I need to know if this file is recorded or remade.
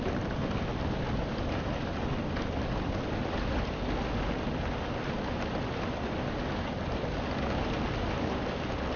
recorded